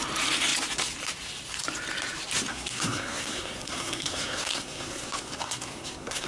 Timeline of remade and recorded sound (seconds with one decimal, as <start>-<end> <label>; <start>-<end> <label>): 0.0-2.5 recorded; 2.5-6.3 remade